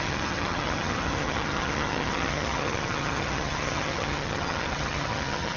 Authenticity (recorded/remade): remade